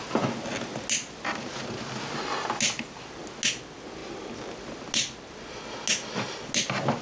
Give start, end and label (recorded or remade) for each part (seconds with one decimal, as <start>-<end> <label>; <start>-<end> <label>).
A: 0.0-7.0 recorded